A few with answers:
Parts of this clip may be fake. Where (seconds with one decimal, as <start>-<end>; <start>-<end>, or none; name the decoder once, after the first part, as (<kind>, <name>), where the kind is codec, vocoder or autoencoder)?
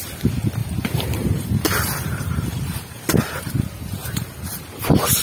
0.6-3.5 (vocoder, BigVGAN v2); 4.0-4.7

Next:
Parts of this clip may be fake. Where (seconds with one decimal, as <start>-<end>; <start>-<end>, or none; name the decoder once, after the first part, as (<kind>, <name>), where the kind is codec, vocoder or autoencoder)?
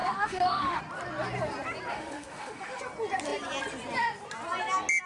0.0-0.8 (autoencoder, DAC-VAE); 1.9-2.8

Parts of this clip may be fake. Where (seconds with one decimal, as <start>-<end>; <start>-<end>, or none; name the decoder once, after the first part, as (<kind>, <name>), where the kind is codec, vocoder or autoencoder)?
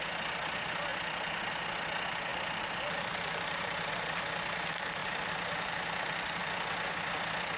2.3-3.9 (vocoder, BigVGAN v2); 5.0-5.7